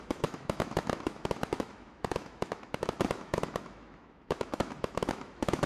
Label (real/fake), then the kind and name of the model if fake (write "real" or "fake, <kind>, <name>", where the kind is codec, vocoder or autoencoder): fake, autoencoder, DAC-VAE